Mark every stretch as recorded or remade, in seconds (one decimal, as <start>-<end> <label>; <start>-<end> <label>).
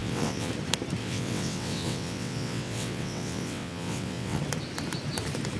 0.0-0.5 remade; 0.5-1.0 recorded; 1.0-4.4 remade; 4.4-5.6 recorded